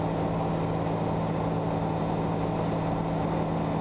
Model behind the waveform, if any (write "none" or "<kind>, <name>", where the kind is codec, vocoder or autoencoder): none